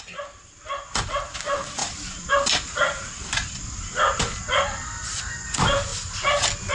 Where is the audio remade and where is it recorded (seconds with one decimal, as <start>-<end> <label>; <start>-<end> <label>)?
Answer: 0.0-6.7 recorded